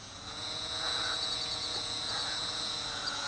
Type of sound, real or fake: fake